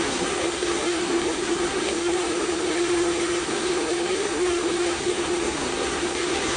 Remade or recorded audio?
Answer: remade